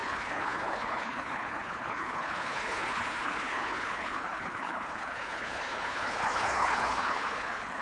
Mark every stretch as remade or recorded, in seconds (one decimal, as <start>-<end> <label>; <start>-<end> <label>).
0.0-7.8 remade

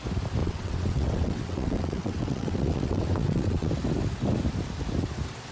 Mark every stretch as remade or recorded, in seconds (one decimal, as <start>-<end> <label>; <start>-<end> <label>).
0.0-0.4 recorded; 0.4-3.7 remade; 3.7-5.5 recorded

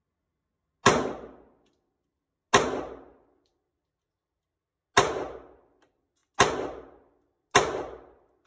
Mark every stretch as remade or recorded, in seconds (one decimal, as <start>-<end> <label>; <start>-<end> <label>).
0.0-8.5 recorded

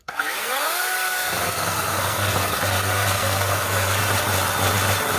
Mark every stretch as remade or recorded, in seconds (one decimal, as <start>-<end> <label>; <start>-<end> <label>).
0.0-4.0 remade; 4.0-5.2 recorded